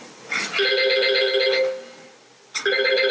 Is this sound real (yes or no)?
yes